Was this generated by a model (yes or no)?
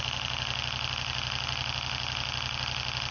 no